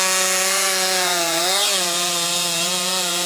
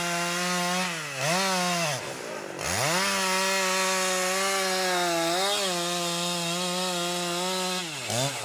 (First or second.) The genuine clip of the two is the second